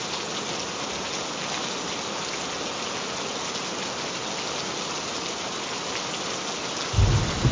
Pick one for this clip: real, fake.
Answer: real